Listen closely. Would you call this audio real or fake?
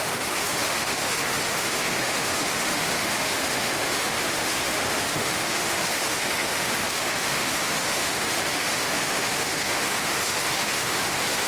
fake